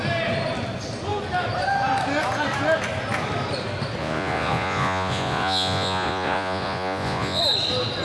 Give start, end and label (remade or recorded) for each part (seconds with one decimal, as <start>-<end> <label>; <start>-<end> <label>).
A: 0.0-4.0 recorded; 4.0-7.4 remade; 7.4-8.0 recorded